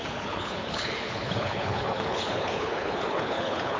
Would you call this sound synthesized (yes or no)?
yes